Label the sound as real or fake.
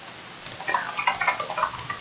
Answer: real